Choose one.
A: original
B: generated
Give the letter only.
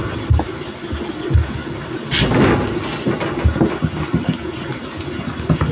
A